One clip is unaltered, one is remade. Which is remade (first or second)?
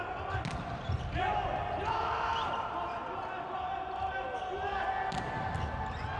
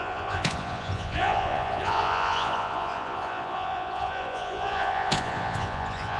second